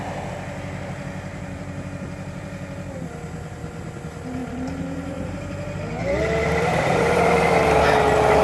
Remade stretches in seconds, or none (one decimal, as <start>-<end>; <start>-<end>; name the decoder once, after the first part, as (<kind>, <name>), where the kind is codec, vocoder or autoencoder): 1.3-2.9 (vocoder, BigVGAN v2); 4.4-7.5